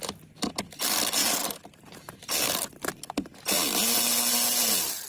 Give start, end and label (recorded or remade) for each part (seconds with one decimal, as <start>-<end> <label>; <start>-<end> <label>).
0.0-5.1 recorded